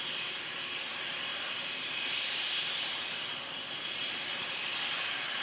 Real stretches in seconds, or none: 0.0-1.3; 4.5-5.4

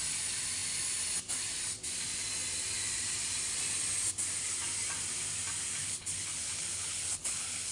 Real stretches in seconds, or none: 0.0-5.8